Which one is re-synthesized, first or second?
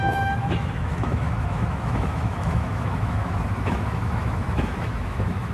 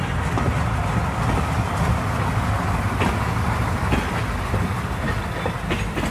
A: first